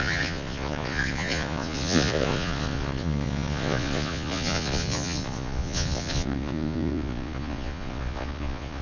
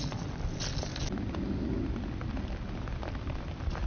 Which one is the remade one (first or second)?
first